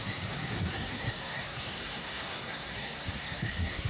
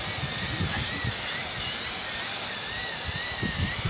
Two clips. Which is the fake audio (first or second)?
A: first